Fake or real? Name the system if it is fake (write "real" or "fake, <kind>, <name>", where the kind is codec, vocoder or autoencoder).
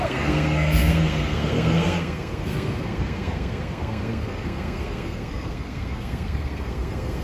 fake, codec, SNAC